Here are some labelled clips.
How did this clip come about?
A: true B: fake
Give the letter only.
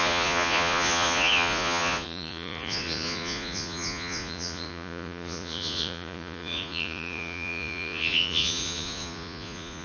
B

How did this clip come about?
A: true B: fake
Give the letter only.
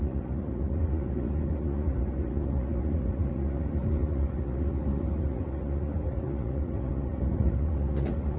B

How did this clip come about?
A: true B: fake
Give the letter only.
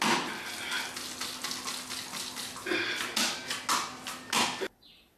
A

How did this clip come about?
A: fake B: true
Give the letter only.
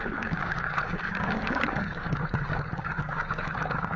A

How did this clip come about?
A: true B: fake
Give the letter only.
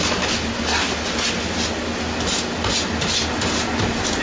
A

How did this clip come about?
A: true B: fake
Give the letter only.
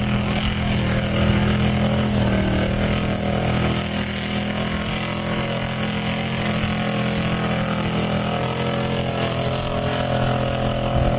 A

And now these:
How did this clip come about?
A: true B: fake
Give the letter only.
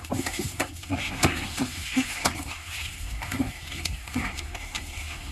B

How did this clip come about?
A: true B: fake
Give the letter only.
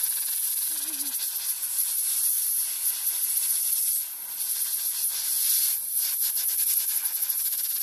A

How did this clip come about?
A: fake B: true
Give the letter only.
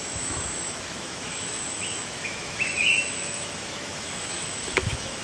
A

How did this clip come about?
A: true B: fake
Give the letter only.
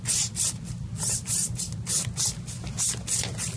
A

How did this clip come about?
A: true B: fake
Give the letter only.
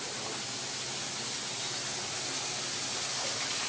A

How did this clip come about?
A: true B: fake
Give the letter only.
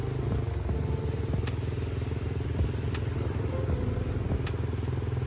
A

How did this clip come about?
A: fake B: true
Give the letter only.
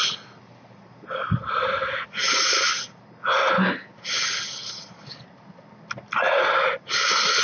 B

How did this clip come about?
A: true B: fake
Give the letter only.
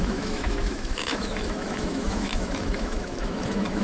B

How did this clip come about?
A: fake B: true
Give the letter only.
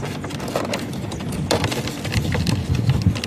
B